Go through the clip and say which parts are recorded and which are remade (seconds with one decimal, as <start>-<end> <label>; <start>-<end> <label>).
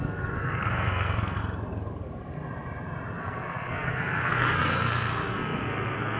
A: 0.0-1.4 remade; 1.4-3.2 recorded; 3.2-6.2 remade